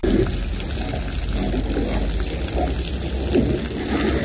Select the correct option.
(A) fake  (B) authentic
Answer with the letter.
B